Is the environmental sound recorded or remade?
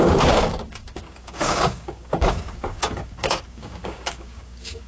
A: remade